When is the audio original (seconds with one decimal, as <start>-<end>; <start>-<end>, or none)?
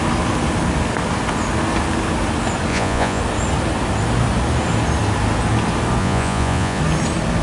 0.0-2.7; 3.2-6.0; 6.8-7.4